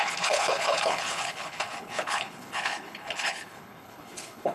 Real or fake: fake